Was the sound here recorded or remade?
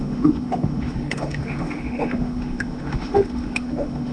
remade